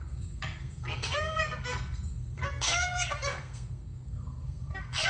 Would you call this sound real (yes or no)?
no